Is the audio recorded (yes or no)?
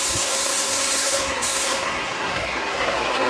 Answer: no